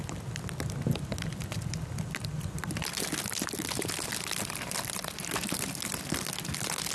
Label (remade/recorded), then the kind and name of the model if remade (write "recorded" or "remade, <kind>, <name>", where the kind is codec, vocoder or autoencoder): recorded